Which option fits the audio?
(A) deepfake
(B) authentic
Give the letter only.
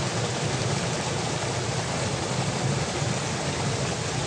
B